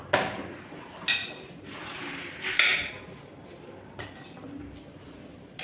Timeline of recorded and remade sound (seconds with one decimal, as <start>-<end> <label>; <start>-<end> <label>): 0.0-5.6 recorded

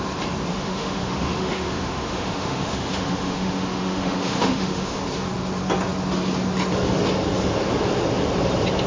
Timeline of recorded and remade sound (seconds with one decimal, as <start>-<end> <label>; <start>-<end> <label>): 0.0-0.5 recorded; 0.5-5.0 remade; 5.0-8.9 recorded